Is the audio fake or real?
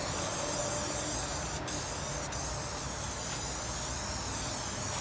real